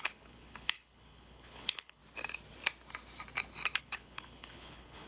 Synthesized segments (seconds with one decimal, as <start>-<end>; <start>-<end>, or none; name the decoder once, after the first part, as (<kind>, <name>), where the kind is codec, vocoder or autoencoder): 0.0-2.0 (codec, HILCodec); 3.8-5.1